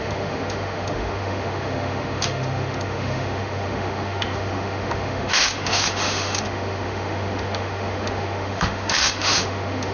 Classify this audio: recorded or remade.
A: remade